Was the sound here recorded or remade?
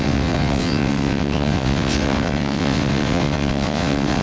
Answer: remade